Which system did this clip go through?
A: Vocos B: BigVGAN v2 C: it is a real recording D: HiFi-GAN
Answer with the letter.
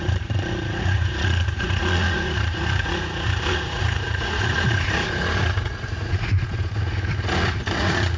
A